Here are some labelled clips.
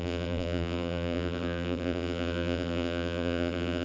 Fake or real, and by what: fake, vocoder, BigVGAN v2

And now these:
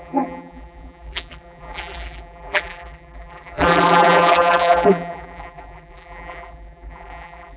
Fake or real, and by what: fake, vocoder, BigVGAN v2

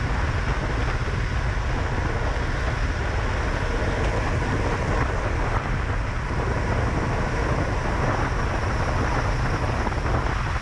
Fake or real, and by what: real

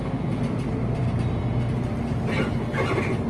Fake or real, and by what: real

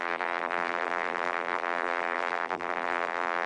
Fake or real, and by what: fake, vocoder, BigVGAN v2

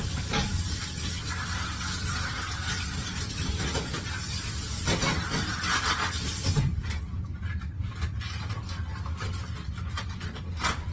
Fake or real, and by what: real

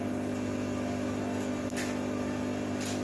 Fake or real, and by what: real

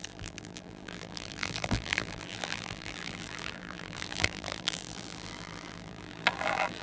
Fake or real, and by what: fake, vocoder, BigVGAN v2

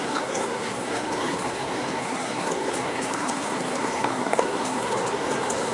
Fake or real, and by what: fake, codec, SNAC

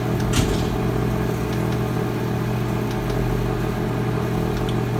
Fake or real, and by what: real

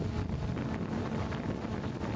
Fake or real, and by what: real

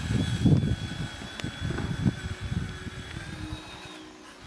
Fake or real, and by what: real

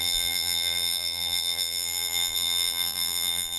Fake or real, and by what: fake, vocoder, BigVGAN v2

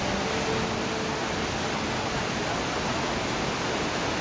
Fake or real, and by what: real